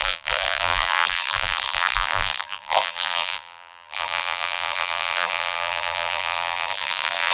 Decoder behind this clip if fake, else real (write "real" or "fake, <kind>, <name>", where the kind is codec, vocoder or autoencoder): fake, vocoder, BigVGAN v2